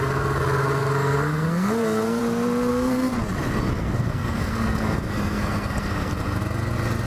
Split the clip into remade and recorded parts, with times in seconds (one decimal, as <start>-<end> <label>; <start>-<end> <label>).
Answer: 0.0-2.2 remade; 2.2-2.7 recorded; 2.7-3.1 remade; 3.1-3.8 recorded; 3.8-6.1 remade; 6.1-7.1 recorded